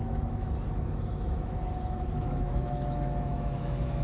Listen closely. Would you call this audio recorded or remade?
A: remade